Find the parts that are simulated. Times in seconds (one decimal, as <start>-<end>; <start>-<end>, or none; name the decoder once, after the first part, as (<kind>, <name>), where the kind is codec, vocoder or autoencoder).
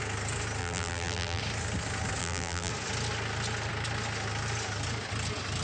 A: 0.6-1.4 (vocoder, BigVGAN v2); 2.2-2.7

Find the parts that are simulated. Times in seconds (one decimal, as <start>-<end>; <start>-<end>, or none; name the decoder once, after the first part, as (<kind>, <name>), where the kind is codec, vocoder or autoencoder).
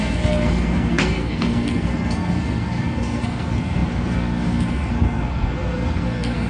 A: 0.0-6.5 (codec, SNAC)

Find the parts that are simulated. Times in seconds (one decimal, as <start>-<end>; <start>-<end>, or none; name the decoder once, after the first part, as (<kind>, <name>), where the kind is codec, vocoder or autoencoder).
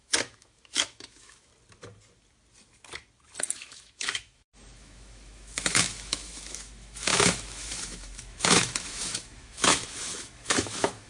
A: 0.0-1.5 (autoencoder, DAC-VAE); 3.4-11.1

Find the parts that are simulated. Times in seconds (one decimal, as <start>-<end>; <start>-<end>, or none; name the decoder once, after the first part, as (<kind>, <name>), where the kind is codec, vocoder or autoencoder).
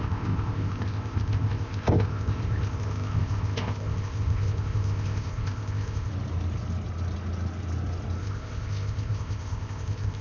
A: 0.0-6.1 (codec, ZipCodec); 8.2-10.2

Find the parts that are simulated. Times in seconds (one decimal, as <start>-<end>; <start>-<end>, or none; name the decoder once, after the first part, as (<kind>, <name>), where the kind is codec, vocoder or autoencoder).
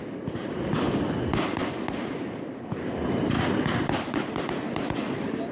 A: none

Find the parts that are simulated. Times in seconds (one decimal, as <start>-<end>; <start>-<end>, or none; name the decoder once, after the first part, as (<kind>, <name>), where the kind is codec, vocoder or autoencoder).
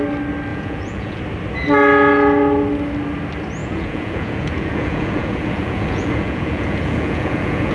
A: 0.5-1.2 (vocoder, Vocos); 3.6-7.7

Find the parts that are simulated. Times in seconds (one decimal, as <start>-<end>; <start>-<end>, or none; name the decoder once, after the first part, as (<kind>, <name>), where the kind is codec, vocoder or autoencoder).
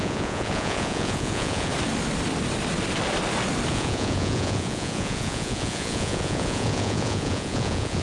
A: 0.0-1.7 (vocoder, Vocos); 3.7-8.0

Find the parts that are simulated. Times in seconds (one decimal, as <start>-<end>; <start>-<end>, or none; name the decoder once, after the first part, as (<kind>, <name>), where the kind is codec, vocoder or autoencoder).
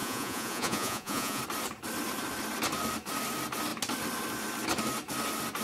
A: 0.0-1.4 (vocoder, Vocos)